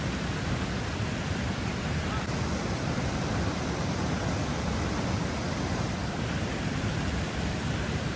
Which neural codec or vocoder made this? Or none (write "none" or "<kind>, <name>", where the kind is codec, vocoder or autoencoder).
vocoder, BigVGAN v2